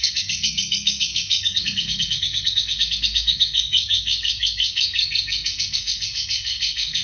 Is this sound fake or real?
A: fake